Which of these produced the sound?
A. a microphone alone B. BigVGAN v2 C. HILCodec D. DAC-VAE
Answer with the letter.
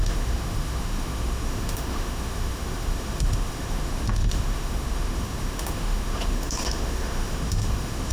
D